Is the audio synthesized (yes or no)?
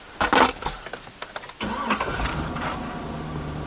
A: no